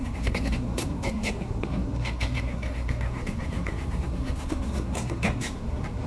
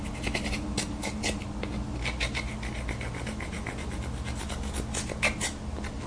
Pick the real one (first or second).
second